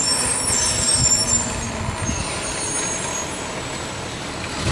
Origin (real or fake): real